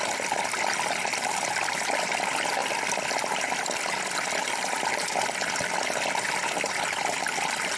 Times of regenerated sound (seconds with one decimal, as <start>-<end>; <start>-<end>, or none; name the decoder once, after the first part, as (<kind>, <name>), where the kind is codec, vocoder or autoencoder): 0.0-7.8 (vocoder, BigVGAN v2)